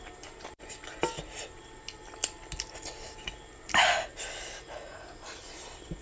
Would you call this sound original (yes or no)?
yes